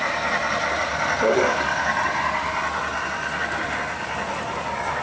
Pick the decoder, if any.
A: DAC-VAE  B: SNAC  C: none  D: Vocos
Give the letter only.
C